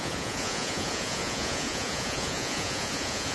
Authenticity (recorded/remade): remade